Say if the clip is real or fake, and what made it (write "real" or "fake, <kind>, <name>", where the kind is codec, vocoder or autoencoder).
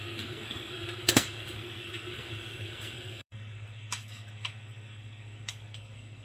fake, codec, SNAC